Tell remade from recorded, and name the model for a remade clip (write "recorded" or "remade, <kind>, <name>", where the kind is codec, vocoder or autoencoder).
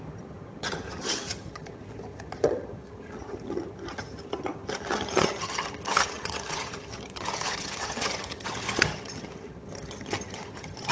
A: remade, vocoder, HiFi-GAN